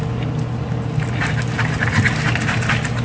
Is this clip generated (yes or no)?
no